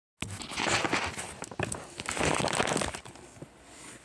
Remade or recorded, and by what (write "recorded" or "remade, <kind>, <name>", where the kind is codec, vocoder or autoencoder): recorded